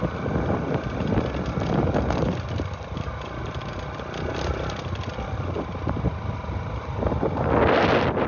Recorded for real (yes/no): yes